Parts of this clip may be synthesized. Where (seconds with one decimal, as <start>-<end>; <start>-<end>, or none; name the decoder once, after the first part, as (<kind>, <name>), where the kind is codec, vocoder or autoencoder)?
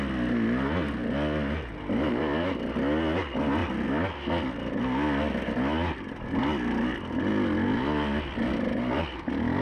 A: none